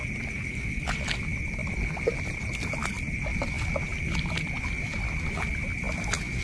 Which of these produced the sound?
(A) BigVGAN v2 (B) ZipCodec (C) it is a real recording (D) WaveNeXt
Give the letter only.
C